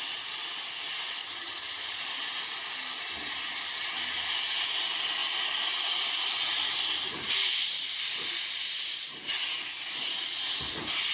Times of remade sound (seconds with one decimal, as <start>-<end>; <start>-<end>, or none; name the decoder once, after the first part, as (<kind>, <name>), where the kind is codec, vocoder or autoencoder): 1.2-2.0 (vocoder, HiFi-GAN)